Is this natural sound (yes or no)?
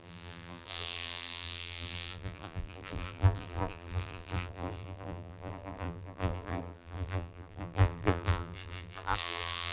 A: no